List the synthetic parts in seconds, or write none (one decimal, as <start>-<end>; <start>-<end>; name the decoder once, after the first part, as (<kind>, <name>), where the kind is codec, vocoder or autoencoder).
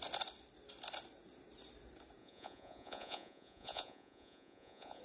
2.2-5.0 (vocoder, Vocos)